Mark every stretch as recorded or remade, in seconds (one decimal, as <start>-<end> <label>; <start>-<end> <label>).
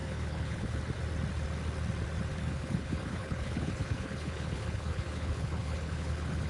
0.0-0.8 remade; 0.8-2.3 recorded; 2.3-6.5 remade